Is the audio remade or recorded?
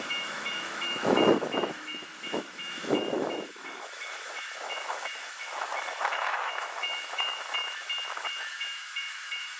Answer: remade